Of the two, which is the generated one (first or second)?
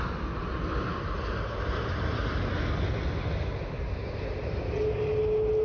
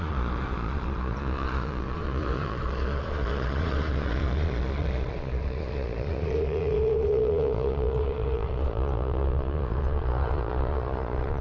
second